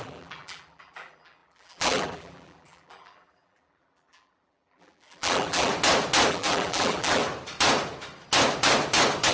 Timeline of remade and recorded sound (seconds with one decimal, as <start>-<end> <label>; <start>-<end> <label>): 0.0-5.7 remade; 5.7-6.3 recorded; 6.3-7.2 remade; 7.2-9.3 recorded